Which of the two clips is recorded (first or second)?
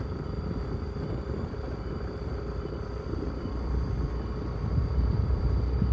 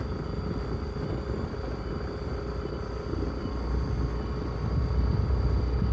second